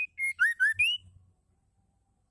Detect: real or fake real